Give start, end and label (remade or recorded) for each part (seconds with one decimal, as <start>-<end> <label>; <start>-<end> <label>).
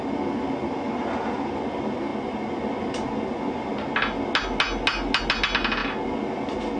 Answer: 0.0-6.8 recorded